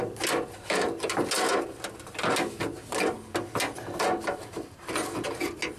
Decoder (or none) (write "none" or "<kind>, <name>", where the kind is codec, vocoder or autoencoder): none